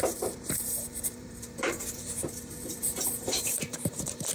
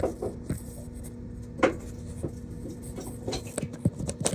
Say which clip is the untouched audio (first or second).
second